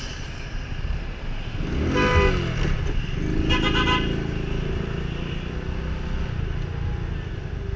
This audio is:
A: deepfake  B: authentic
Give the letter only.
B